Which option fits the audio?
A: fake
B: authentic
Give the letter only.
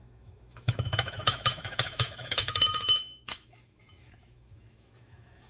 A